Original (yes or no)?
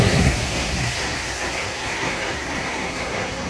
no